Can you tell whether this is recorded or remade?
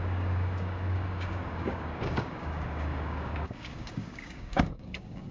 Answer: remade